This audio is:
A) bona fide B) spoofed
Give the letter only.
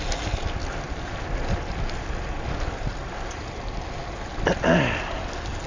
A